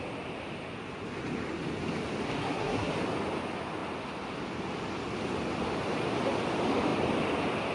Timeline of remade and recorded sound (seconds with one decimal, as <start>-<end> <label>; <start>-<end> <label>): 0.0-2.4 recorded; 2.4-2.9 remade; 2.9-7.7 recorded